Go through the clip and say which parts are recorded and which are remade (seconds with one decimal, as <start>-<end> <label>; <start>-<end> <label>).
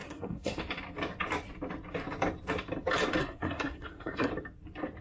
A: 0.0-0.6 remade; 0.6-3.2 recorded; 3.2-4.3 remade; 4.3-5.0 recorded